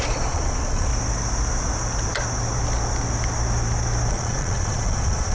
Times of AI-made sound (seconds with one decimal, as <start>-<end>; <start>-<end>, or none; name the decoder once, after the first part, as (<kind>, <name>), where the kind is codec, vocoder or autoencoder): 0.0-0.9 (vocoder, Vocos); 4.1-5.3